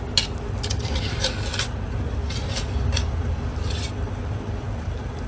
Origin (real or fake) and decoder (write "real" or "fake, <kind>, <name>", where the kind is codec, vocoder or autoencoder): real